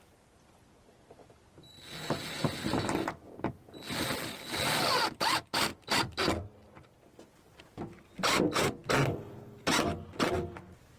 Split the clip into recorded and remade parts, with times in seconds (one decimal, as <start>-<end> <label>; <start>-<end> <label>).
0.0-11.0 recorded